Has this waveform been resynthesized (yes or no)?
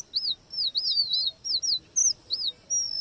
no